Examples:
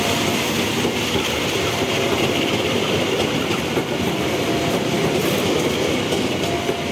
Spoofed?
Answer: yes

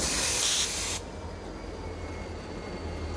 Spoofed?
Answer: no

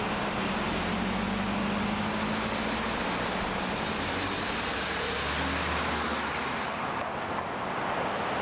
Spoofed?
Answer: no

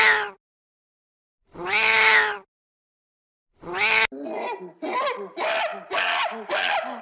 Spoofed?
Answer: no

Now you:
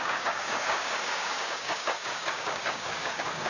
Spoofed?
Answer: yes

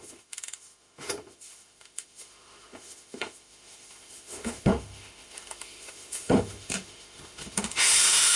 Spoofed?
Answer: yes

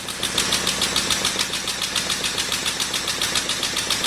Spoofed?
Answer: no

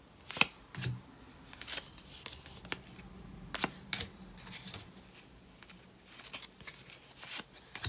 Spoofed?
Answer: no